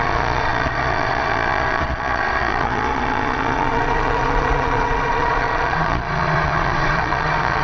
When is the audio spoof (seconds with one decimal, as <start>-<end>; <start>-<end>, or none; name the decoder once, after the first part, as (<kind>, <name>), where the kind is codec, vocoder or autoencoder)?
0.0-7.6 (vocoder, Vocos)